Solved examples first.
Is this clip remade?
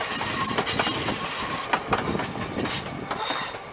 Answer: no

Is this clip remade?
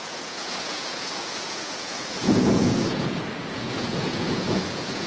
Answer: yes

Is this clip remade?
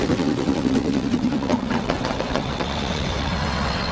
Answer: yes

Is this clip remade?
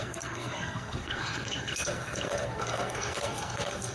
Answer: yes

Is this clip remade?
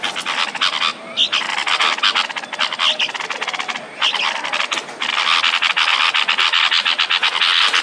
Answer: no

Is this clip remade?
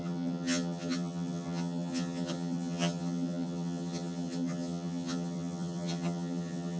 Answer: yes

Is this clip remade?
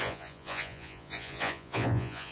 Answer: yes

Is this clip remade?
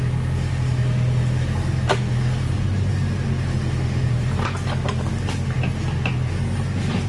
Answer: no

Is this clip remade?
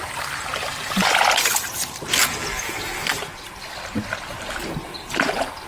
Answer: no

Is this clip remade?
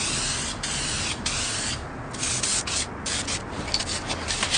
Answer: no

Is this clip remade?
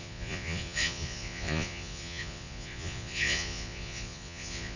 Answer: yes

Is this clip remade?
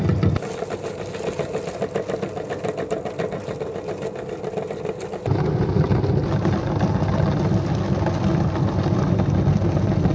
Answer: no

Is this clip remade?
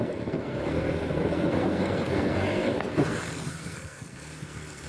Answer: yes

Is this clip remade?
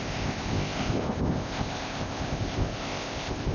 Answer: yes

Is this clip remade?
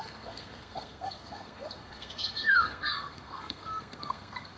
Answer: yes